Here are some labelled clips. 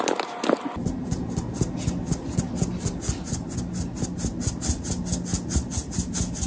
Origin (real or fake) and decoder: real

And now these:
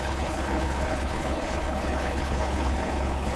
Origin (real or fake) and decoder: fake, codec, HILCodec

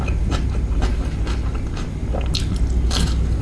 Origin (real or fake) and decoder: real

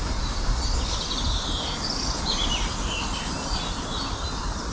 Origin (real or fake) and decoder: real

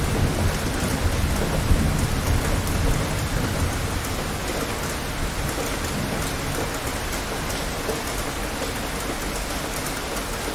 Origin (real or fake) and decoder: real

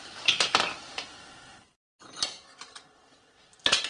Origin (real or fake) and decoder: real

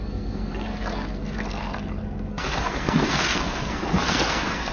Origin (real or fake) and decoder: fake, codec, SNAC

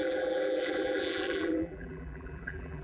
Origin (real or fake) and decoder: fake, vocoder, BigVGAN v2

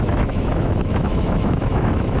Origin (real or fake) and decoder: fake, autoencoder, DAC-VAE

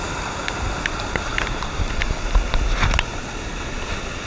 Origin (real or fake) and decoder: real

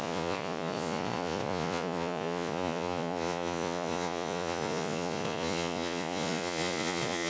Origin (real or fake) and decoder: fake, vocoder, Vocos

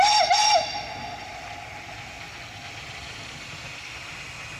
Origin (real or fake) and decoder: real